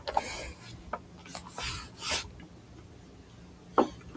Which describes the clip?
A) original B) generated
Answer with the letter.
A